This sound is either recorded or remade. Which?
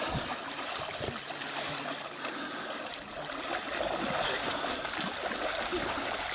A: recorded